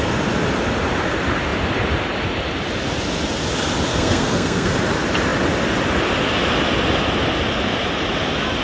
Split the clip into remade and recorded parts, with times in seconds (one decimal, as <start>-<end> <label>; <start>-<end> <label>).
0.0-3.9 recorded; 3.9-4.7 remade; 4.7-8.6 recorded